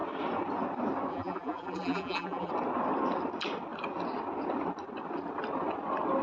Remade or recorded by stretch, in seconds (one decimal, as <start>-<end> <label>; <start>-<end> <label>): 0.0-1.1 recorded; 1.1-2.5 remade; 2.5-6.2 recorded